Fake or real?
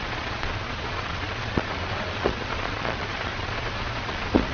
fake